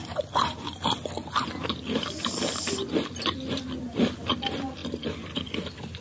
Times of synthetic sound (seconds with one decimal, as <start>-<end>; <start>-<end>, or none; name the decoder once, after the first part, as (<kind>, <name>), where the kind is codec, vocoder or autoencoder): none